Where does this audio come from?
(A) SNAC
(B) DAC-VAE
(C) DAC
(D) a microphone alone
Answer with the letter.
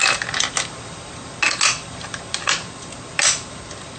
D